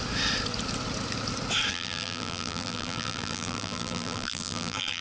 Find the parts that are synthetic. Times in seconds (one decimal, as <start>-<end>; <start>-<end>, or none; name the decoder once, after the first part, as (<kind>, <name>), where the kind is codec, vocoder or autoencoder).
1.7-5.0 (vocoder, BigVGAN v2)